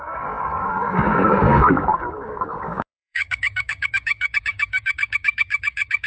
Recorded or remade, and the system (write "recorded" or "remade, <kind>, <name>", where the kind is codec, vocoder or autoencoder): remade, codec, DAC